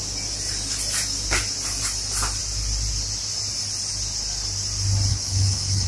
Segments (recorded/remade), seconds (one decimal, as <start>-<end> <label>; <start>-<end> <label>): 0.0-5.1 recorded; 5.1-5.9 remade

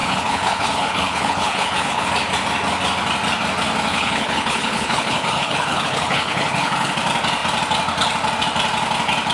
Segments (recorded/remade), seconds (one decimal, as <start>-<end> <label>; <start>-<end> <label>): 0.0-2.1 remade; 2.1-3.9 recorded; 3.9-6.9 remade; 6.9-9.3 recorded